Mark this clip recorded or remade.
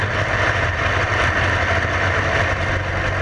recorded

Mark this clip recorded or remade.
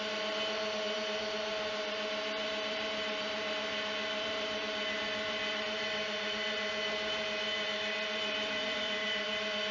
remade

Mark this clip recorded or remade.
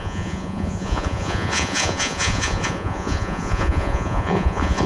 remade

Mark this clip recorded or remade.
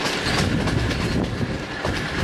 recorded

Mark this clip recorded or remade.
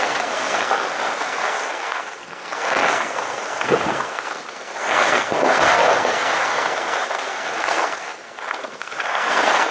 remade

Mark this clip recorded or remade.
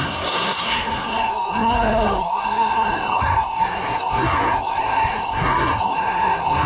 remade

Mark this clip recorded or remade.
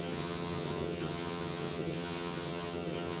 remade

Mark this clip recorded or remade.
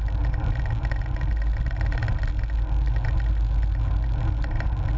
recorded